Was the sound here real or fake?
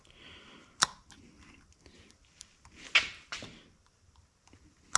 real